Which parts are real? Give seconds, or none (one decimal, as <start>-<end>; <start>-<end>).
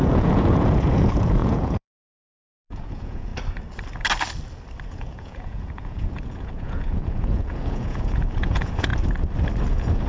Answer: 3.3-4.9; 8.9-9.7